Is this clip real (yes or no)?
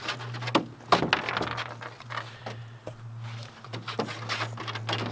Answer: yes